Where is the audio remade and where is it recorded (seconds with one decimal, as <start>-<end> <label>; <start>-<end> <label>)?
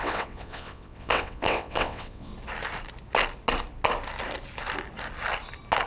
0.0-2.3 remade; 2.3-5.9 recorded